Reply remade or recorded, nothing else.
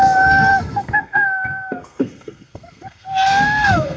remade